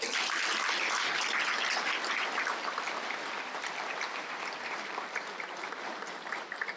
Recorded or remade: remade